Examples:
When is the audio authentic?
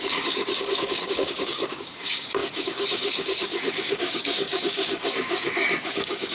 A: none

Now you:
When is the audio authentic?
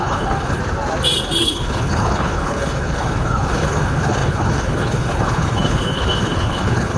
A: 0.6-1.4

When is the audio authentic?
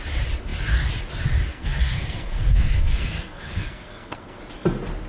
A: 0.0-1.5; 4.4-5.1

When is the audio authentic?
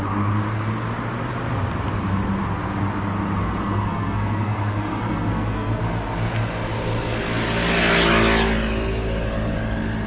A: 0.0-3.4; 5.8-10.1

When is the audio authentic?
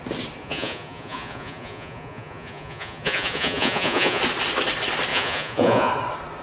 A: 0.0-0.4; 4.2-5.1; 5.9-6.4